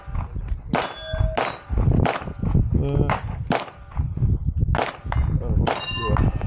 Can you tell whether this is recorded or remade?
recorded